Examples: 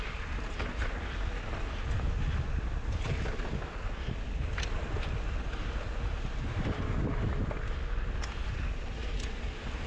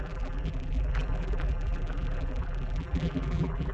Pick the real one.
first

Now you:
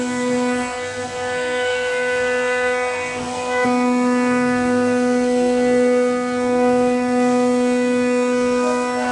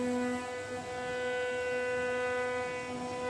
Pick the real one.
second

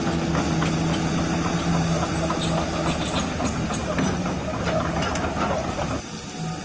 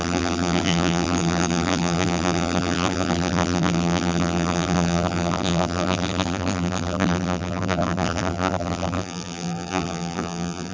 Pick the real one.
first